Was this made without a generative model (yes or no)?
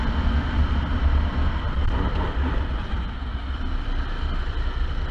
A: yes